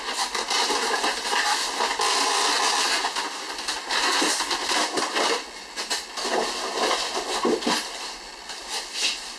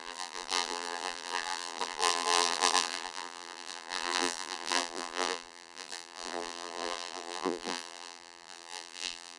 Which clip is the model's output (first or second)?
second